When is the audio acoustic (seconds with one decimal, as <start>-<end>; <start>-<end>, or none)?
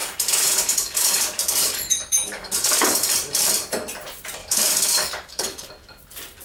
3.1-4.4; 5.7-6.4